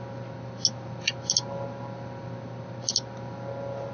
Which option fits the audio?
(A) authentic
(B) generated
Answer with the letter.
A